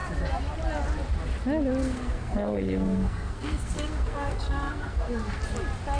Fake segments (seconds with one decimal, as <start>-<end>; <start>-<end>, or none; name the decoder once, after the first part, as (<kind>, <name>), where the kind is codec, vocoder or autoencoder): 1.8-5.4 (codec, SNAC)